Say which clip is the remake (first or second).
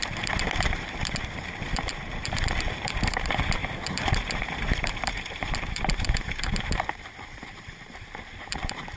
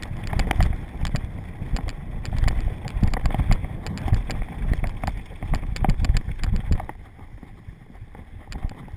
first